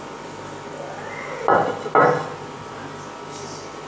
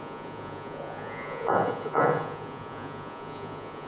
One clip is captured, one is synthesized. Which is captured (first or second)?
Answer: first